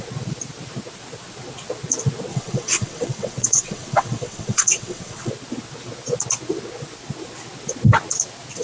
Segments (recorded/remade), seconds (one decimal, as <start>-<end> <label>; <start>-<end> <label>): 0.0-2.3 recorded; 2.3-5.3 remade; 5.3-8.6 recorded

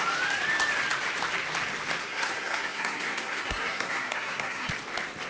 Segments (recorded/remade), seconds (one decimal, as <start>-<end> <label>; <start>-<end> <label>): 0.0-2.0 recorded; 2.0-4.7 remade; 4.7-5.3 recorded